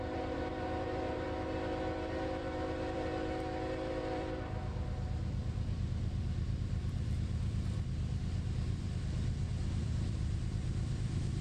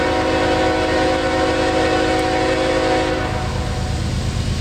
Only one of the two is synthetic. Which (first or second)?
first